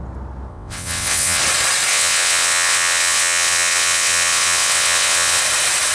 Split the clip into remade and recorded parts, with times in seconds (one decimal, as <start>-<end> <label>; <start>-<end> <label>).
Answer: 0.0-0.5 recorded; 0.5-1.4 remade; 1.4-1.9 recorded; 1.9-5.4 remade; 5.4-5.9 recorded